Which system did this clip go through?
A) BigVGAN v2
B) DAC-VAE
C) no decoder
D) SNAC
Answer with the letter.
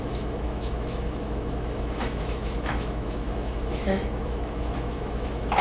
B